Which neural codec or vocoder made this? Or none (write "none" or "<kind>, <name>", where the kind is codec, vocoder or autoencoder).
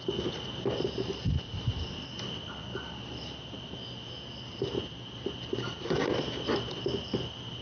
none